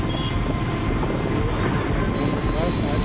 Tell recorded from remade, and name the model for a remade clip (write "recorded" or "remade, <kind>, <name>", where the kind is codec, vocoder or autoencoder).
recorded